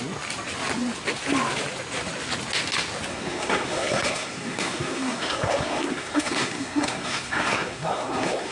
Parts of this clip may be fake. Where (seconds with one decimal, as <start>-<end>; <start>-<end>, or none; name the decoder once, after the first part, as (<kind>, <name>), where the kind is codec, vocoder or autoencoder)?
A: 3.1-8.5 (codec, SNAC)